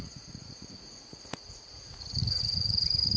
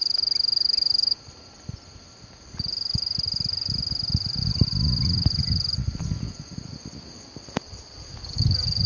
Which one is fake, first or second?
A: first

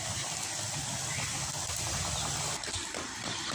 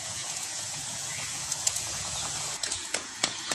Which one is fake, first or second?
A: second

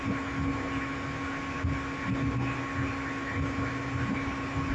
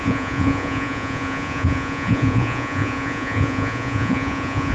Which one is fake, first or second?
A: second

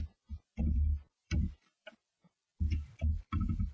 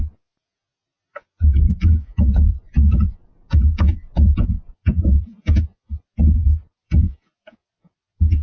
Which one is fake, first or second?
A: second